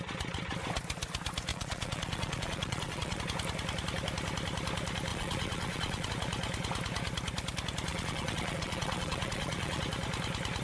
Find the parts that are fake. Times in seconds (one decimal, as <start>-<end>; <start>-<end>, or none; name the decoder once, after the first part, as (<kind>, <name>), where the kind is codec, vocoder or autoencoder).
1.5-3.2 (vocoder, Vocos); 5.1-6.1; 7.9-9.8